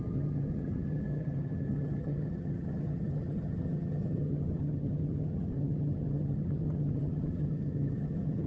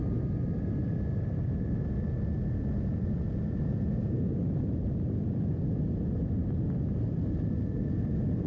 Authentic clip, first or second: second